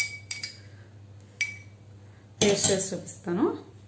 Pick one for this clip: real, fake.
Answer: real